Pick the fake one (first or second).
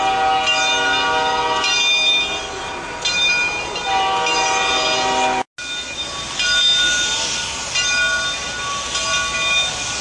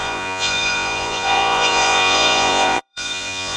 second